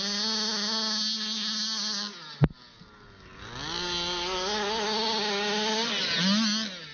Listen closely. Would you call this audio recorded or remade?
recorded